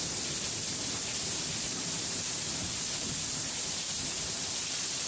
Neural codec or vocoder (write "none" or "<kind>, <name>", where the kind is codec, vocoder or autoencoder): vocoder, BigVGAN v2